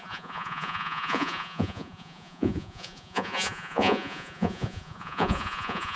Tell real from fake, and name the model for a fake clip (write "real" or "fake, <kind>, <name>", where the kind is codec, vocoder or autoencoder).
fake, vocoder, Vocos